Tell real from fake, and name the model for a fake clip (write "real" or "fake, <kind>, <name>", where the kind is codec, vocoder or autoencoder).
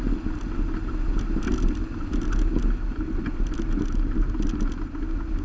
real